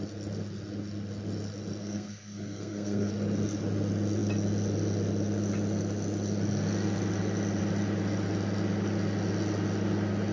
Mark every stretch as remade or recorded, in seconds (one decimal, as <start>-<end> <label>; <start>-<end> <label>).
0.0-1.8 recorded; 1.8-3.1 remade; 3.1-10.3 recorded